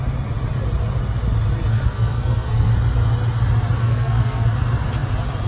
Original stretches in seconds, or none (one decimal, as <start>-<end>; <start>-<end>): 0.0-1.7; 2.7-3.8; 4.5-5.5